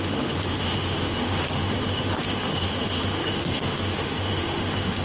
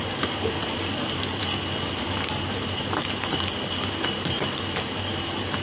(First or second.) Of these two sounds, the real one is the second